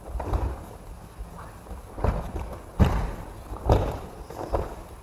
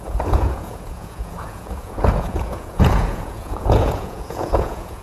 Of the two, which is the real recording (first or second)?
first